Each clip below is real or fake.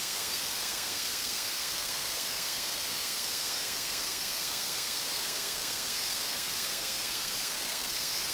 fake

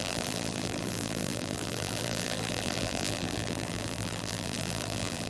fake